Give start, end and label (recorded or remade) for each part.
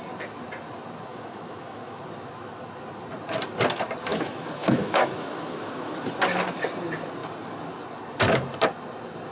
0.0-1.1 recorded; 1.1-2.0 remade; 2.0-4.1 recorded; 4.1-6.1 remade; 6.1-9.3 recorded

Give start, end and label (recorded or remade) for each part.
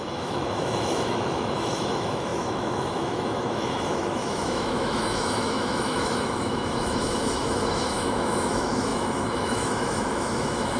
0.0-10.8 remade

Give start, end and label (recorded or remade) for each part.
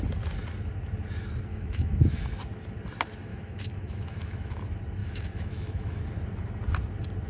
0.0-1.5 recorded; 1.5-2.4 remade; 2.4-3.3 recorded; 3.3-4.6 remade; 4.6-5.0 recorded; 5.0-6.0 remade; 6.0-7.3 recorded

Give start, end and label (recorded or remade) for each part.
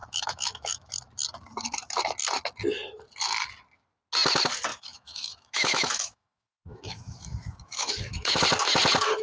0.0-0.9 remade; 0.9-4.7 recorded; 4.7-8.4 remade; 8.4-9.2 recorded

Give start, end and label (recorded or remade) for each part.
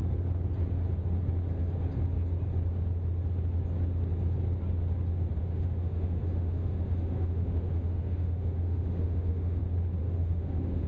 0.0-5.4 recorded; 5.4-9.6 remade; 9.6-10.0 recorded; 10.0-10.9 remade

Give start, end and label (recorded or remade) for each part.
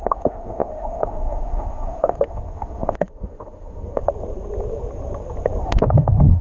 0.0-4.0 remade; 4.0-5.6 recorded; 5.6-6.4 remade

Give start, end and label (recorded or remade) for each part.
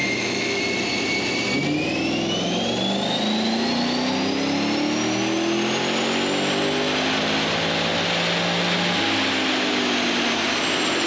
0.0-0.6 remade; 0.6-11.1 recorded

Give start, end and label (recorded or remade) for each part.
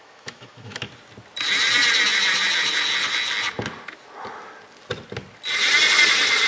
0.0-0.9 remade; 0.9-6.5 recorded